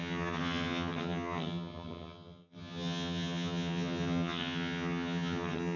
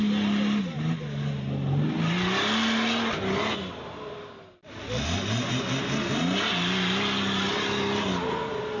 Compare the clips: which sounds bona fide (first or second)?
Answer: second